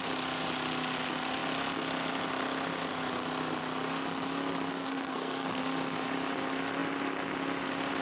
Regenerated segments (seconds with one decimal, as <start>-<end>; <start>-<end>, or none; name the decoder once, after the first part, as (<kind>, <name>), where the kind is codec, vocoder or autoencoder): 4.7-5.6 (codec, SNAC)